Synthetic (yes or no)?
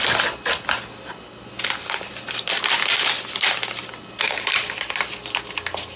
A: no